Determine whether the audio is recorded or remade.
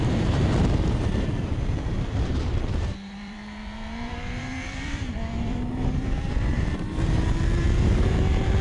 remade